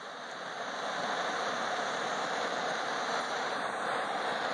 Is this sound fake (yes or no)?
yes